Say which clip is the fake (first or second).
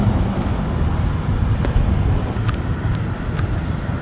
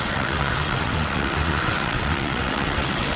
second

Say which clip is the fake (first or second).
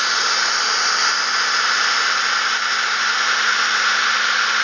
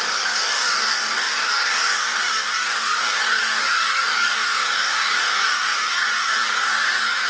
second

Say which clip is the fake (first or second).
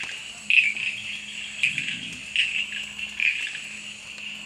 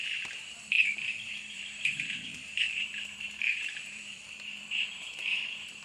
second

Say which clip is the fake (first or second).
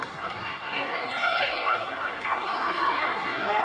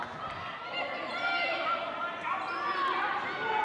first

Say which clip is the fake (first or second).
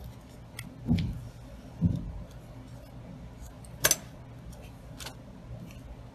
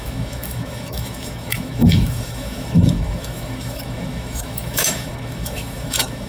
second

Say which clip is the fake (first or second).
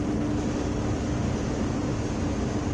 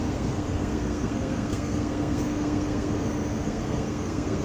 second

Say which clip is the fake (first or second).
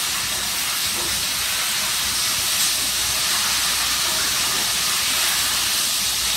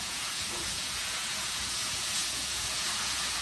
second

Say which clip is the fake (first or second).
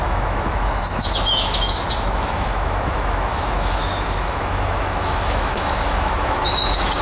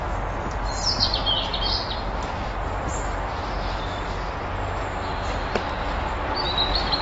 first